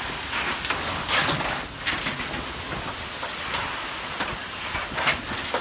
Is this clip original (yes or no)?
yes